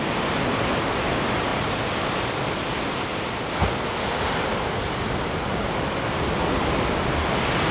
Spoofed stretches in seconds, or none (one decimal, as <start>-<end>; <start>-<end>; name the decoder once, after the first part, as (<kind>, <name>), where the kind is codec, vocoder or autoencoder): none